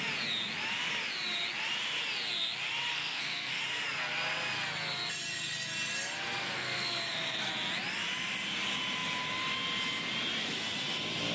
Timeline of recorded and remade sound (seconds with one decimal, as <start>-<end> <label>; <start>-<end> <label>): 0.0-2.9 recorded; 2.9-3.6 remade; 3.6-6.4 recorded; 6.4-7.5 remade; 7.5-11.3 recorded